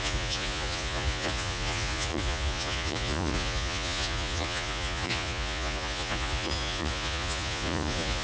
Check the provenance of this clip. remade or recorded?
remade